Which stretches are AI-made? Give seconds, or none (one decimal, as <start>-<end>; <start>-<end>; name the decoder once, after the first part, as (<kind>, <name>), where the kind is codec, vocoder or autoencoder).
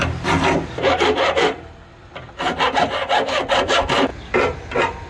none